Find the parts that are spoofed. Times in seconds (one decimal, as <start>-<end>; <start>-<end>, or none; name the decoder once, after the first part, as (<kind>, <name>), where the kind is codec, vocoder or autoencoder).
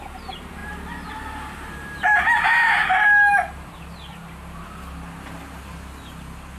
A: none